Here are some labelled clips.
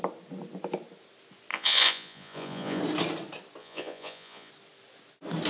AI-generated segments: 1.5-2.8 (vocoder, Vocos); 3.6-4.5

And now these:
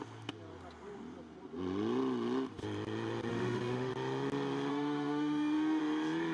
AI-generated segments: 3.3-3.9 (autoencoder, DAC-VAE); 4.7-5.8

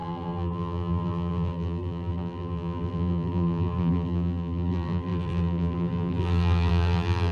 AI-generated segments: 0.0-7.3 (vocoder, BigVGAN v2)

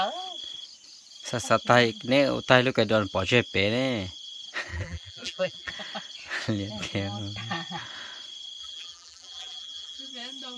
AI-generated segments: 4.7-5.7 (vocoder, BigVGAN v2); 8.6-10.1

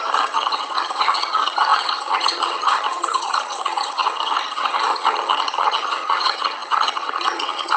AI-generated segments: 0.0-7.8 (vocoder, HiFi-GAN)

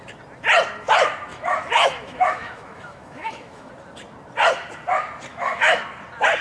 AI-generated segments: 1.3-3.7 (autoencoder, DAC-VAE); 5.3-5.8

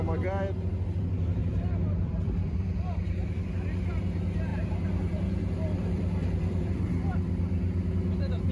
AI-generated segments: 1.4-3.5 (vocoder, BigVGAN v2); 4.5-7.9